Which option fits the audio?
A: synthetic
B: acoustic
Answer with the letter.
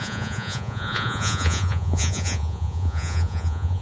A